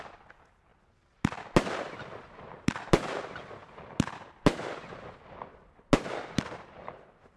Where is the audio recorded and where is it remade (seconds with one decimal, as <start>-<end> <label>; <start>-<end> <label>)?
0.0-7.4 recorded